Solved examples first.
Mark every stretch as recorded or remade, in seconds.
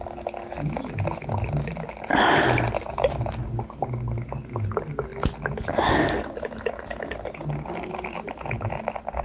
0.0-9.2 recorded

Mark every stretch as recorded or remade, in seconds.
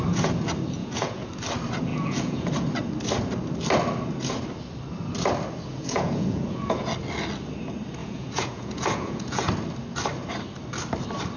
0.0-0.8 recorded; 0.8-1.3 remade; 1.3-1.9 recorded; 1.9-2.5 remade; 2.5-5.7 recorded; 5.7-6.9 remade; 6.9-8.0 recorded; 8.0-9.5 remade; 9.5-11.4 recorded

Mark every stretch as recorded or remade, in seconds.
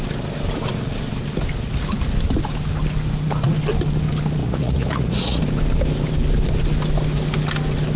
0.0-4.4 recorded; 4.4-5.4 remade; 5.4-8.0 recorded